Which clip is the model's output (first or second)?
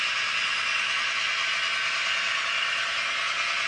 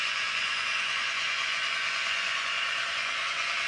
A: second